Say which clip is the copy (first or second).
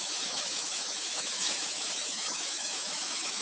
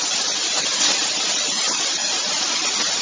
first